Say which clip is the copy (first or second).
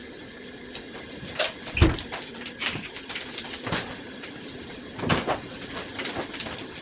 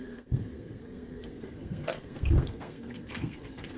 second